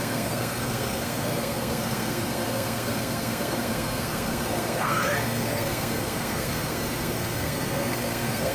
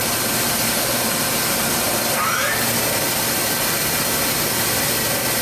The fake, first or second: first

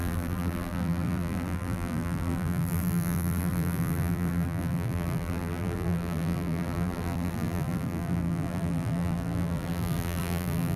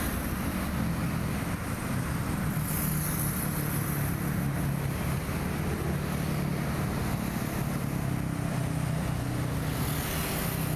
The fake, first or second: first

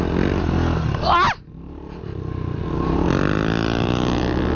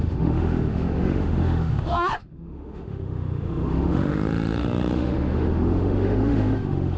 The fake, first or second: second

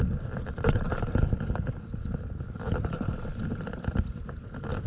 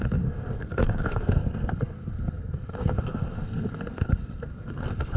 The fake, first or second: second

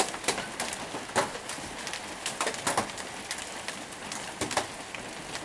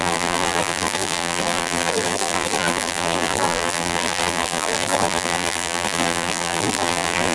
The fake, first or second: second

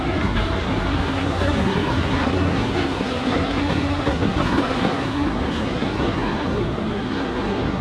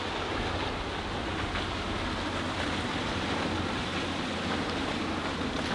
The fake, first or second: first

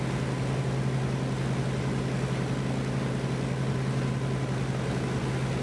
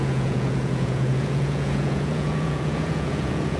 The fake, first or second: second